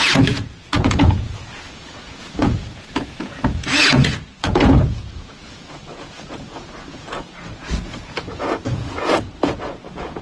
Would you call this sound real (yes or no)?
no